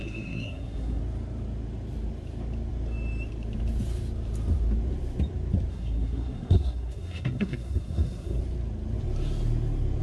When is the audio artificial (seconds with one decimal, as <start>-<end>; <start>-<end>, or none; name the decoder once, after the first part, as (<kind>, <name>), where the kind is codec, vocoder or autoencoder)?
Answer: 0.0-1.0 (codec, SNAC); 5.7-8.4